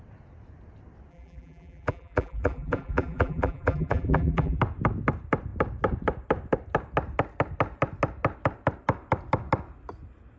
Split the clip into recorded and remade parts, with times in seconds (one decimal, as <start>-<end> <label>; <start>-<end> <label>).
0.0-1.1 recorded; 1.1-4.6 remade; 4.6-10.4 recorded